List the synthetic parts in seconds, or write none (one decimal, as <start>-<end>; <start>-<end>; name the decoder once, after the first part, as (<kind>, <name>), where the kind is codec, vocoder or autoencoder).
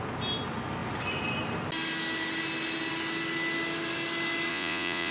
4.5-5.1 (vocoder, Vocos)